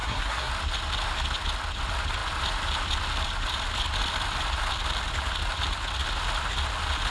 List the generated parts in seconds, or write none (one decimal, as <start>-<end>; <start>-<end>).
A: 0.0-0.5